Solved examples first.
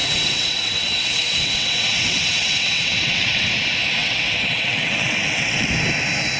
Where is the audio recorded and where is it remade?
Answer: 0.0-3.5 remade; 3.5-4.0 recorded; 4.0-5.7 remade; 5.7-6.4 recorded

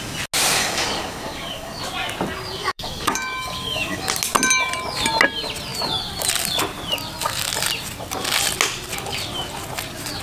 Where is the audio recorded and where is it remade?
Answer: 0.0-0.6 recorded; 0.6-1.8 remade; 1.8-2.6 recorded; 2.6-4.1 remade; 4.1-10.2 recorded

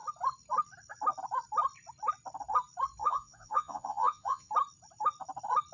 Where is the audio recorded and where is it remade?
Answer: 0.0-3.0 recorded; 3.0-4.5 remade; 4.5-5.7 recorded

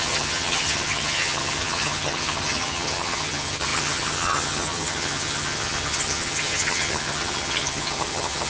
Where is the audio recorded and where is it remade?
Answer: 0.0-8.5 remade

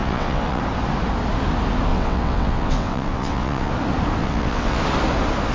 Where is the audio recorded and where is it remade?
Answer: 0.0-0.6 remade; 0.6-1.9 recorded; 1.9-3.7 remade; 3.7-4.2 recorded; 4.2-4.8 remade; 4.8-5.5 recorded

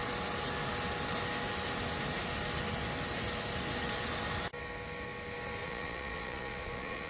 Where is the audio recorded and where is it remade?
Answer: 0.0-5.6 recorded; 5.6-7.1 remade

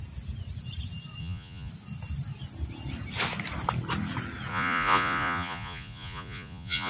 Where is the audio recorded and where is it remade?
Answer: 0.0-1.2 recorded; 1.2-1.7 remade; 1.7-4.5 recorded; 4.5-6.9 remade

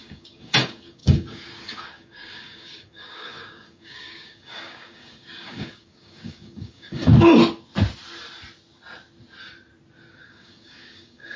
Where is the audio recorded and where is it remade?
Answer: 0.0-7.1 remade; 7.1-10.1 recorded; 10.1-11.4 remade